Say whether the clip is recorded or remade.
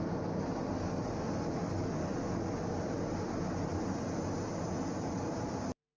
recorded